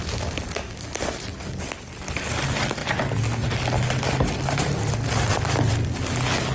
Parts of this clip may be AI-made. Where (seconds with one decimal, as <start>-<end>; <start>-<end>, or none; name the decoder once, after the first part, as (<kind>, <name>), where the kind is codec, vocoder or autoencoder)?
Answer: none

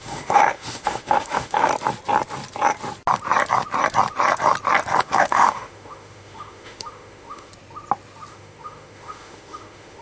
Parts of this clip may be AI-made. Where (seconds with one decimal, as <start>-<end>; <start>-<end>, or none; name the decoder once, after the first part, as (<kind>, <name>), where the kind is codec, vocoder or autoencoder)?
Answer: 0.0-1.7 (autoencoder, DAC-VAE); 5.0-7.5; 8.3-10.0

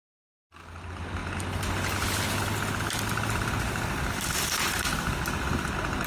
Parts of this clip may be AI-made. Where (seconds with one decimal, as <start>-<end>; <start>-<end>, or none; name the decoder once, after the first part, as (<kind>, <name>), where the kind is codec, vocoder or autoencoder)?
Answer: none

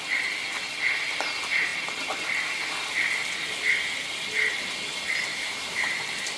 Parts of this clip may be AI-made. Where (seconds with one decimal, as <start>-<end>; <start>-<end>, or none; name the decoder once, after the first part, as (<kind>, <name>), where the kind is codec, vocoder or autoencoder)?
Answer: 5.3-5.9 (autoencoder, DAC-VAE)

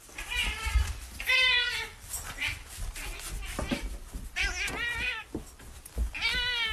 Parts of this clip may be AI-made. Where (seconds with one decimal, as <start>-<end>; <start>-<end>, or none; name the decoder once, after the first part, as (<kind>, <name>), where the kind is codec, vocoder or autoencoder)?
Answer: none

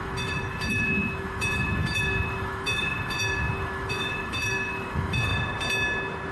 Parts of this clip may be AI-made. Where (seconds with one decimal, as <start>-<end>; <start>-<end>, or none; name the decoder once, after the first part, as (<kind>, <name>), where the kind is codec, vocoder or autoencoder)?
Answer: 0.0-5.3 (autoencoder, DAC-VAE)

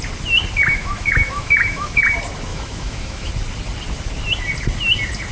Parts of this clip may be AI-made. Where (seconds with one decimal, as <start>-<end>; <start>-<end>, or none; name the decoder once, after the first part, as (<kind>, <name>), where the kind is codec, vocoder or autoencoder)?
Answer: 0.7-2.0 (autoencoder, DAC-VAE); 2.5-3.3

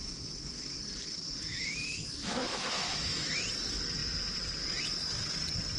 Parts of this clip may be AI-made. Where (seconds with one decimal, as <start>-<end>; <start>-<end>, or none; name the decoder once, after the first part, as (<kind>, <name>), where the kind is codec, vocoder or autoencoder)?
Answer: 0.0-0.8 (autoencoder, DAC-VAE); 1.5-3.4